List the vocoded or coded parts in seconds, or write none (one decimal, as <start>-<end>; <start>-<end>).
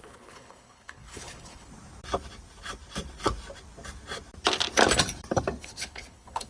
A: 0.0-1.7; 5.6-6.5